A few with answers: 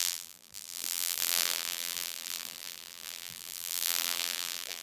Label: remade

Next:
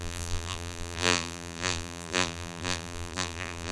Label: remade